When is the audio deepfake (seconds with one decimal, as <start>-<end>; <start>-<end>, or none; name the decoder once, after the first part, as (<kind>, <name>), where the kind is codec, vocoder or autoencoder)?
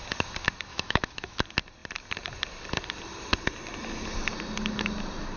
0.7-1.4 (autoencoder, DAC-VAE)